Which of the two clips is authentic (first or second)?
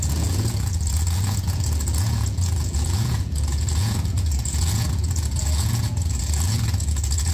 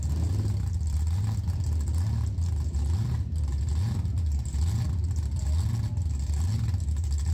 second